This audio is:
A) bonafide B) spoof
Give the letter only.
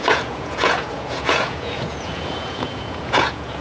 B